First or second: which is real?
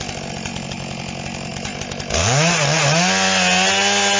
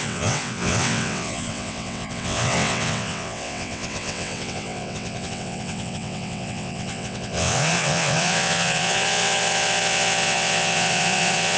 first